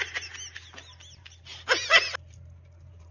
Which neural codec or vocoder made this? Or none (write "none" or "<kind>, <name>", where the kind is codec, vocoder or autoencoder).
none